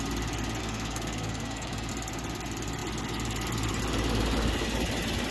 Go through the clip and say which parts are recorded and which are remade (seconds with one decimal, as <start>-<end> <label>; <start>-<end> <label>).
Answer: 0.0-0.6 recorded; 0.6-1.9 remade; 1.9-5.3 recorded